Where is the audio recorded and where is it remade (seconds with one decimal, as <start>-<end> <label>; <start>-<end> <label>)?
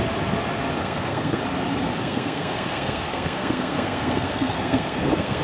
0.0-0.8 recorded; 0.8-1.4 remade; 1.4-2.0 recorded; 2.0-5.4 remade